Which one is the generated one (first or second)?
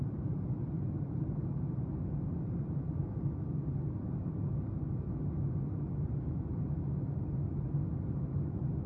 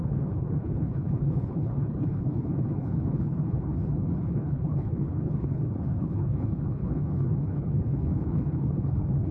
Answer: second